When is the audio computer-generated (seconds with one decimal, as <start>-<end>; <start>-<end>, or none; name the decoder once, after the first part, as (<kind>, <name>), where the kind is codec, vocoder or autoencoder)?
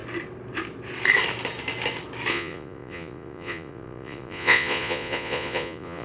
2.3-6.0 (vocoder, Vocos)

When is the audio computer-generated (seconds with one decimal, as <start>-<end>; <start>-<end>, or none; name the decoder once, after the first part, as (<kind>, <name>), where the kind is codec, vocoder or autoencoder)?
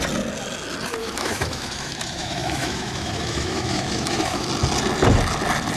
1.0-4.5 (autoencoder, DAC-VAE)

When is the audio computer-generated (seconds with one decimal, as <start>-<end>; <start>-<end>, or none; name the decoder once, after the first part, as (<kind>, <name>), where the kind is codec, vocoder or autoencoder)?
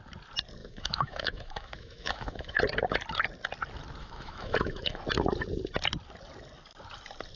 0.6-2.6 (autoencoder, DAC-VAE); 4.0-5.0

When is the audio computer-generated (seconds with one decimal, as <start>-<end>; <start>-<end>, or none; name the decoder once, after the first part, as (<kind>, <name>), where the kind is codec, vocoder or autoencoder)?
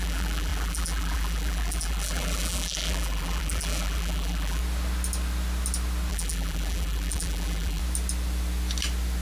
0.0-4.6 (vocoder, BigVGAN v2); 6.1-7.8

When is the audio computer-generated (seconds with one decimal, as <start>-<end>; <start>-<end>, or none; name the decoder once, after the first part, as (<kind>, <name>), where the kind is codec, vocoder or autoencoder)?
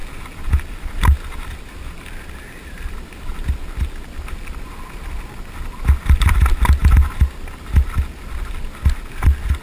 none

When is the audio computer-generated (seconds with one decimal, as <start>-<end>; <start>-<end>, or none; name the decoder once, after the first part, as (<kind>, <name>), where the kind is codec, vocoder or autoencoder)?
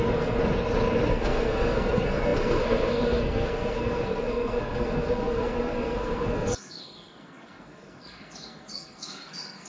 0.0-0.4 (codec, SNAC); 1.1-9.7